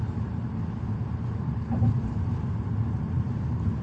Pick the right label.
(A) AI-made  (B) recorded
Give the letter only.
A